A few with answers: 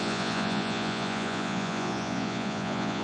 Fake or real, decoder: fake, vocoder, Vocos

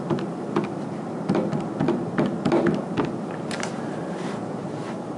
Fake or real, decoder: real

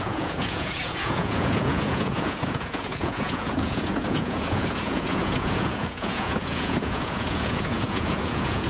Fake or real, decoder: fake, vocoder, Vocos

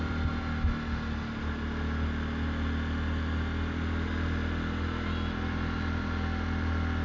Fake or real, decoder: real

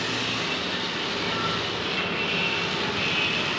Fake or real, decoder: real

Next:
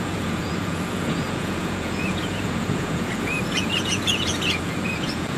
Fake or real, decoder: fake, vocoder, Vocos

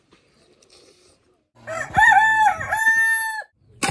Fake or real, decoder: real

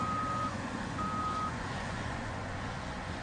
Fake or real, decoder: fake, vocoder, Vocos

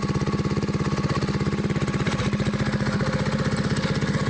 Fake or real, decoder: real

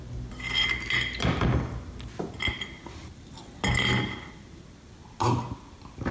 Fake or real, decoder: real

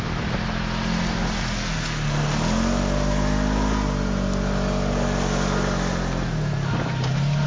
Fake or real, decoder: real